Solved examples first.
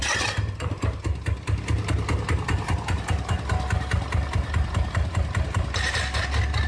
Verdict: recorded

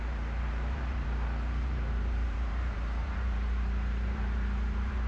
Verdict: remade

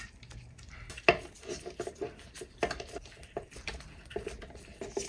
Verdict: recorded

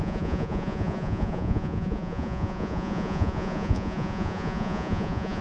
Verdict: remade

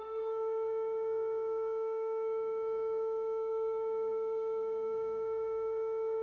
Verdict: remade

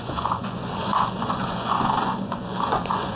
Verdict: remade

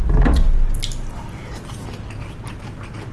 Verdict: recorded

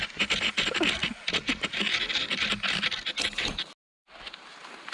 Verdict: recorded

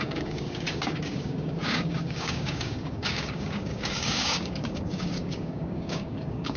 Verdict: remade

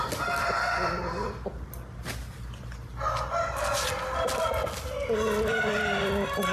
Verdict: recorded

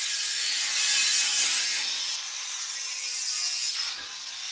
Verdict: recorded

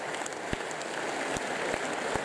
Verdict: recorded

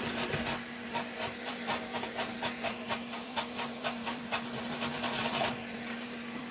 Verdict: remade